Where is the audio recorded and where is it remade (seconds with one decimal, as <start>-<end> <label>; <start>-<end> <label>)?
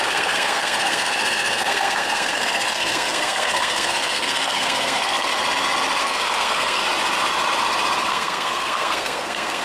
0.0-5.3 remade; 5.3-6.0 recorded; 6.0-6.8 remade; 6.8-8.1 recorded; 8.1-9.6 remade